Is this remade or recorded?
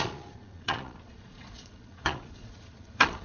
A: remade